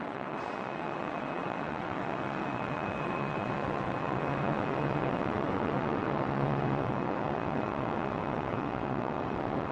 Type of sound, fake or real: fake